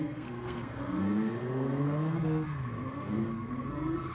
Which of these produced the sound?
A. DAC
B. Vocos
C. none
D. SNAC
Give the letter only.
D